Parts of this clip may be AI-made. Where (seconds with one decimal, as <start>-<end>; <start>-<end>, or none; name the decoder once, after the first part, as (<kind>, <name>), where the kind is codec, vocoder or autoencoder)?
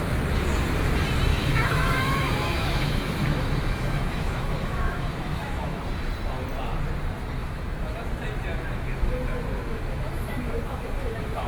1.3-5.8 (autoencoder, DAC-VAE); 7.4-8.1; 8.5-9.1; 9.7-11.5